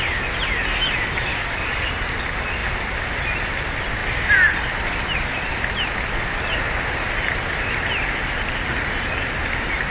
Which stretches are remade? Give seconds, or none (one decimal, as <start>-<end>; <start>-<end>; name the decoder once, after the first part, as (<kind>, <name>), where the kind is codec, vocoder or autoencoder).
1.3-1.9 (codec, DAC)